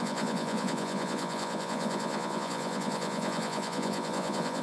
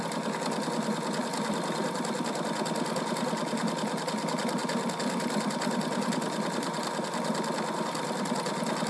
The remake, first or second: first